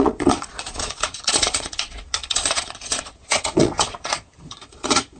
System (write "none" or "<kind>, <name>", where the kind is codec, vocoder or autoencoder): vocoder, Vocos